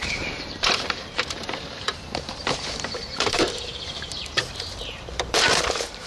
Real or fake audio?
fake